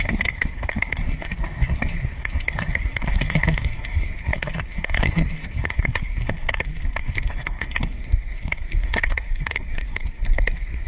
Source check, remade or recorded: remade